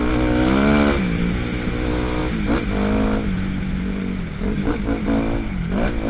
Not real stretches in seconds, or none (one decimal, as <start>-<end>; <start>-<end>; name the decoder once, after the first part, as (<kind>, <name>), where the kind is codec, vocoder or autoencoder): 4.0-5.0 (codec, DAC)